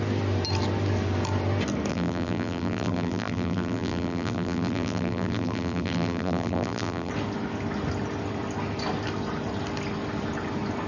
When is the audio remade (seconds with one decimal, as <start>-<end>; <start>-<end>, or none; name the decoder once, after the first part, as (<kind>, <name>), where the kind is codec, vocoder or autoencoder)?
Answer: 1.9-7.1 (vocoder, BigVGAN v2)